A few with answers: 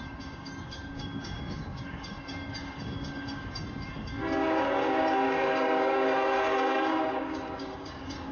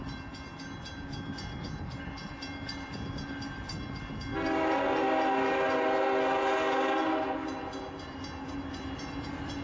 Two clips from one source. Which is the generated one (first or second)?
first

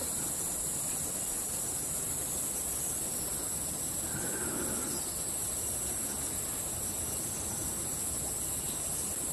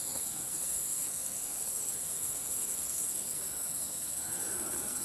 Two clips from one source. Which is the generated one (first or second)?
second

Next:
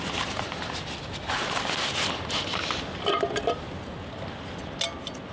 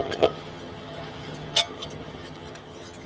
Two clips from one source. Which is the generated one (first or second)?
second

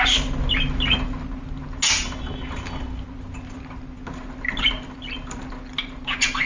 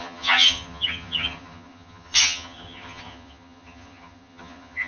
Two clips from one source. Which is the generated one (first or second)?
second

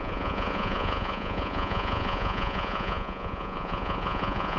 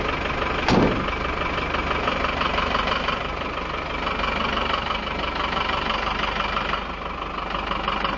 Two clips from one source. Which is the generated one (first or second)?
first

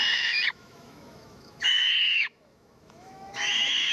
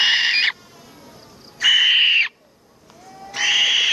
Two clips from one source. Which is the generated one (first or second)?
first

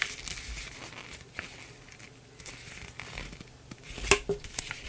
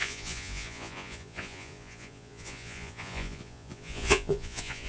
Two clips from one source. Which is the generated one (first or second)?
second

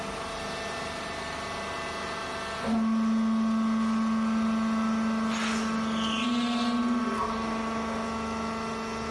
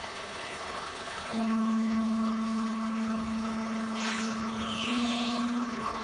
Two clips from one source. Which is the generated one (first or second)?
second